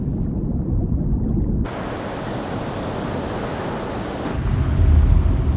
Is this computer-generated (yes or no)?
no